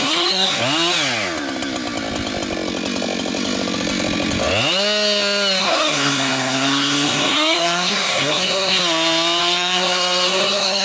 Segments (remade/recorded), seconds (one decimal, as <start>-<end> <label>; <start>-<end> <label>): 0.0-0.6 remade; 0.6-5.6 recorded; 5.6-8.8 remade; 8.8-9.4 recorded; 9.4-10.8 remade